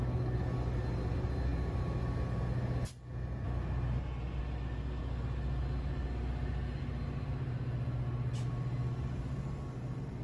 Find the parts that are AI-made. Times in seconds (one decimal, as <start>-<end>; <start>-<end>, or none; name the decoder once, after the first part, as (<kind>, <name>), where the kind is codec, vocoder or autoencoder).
none